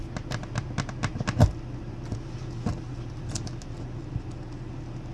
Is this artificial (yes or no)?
no